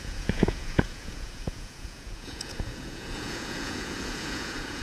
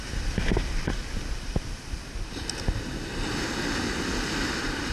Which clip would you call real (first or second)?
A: second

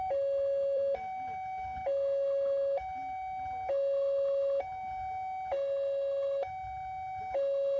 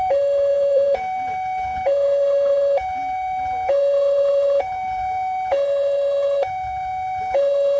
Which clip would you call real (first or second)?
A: first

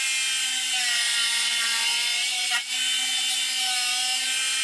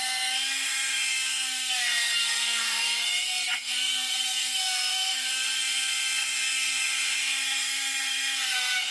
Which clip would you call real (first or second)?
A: first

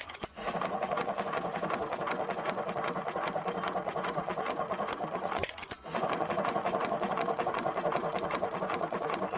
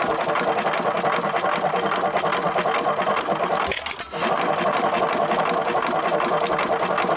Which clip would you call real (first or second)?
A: second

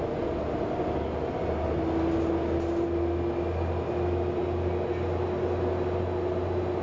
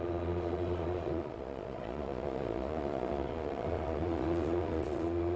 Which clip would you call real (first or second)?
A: first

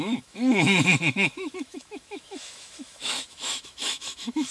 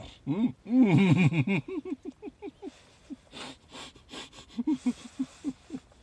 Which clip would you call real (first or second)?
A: second